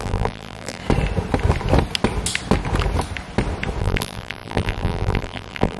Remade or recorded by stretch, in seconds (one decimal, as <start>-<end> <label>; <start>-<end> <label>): 0.0-0.8 remade; 0.8-3.8 recorded; 3.8-5.8 remade